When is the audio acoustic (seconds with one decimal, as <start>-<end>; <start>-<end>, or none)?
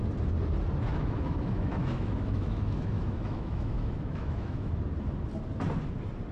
0.0-0.9; 4.7-6.3